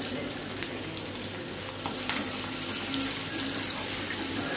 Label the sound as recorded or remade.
recorded